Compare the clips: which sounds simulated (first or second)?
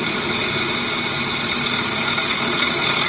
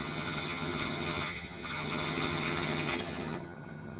second